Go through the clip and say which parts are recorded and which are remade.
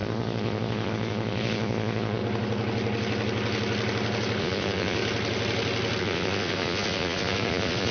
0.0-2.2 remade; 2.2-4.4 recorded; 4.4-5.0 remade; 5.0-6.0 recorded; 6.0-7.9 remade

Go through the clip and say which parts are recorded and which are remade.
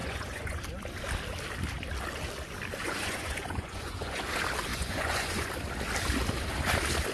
0.0-0.6 remade; 0.6-2.8 recorded; 2.8-4.2 remade; 4.2-4.7 recorded; 4.7-5.5 remade; 5.5-7.1 recorded